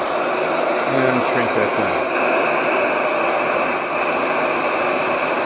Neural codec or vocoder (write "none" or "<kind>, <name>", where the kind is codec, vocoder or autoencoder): none